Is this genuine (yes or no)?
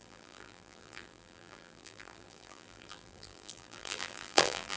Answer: no